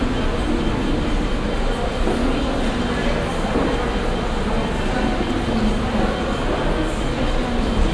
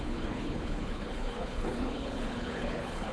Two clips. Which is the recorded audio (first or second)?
first